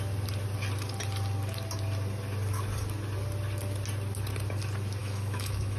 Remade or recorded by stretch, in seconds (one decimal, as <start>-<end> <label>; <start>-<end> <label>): 0.0-5.0 recorded; 5.0-5.8 remade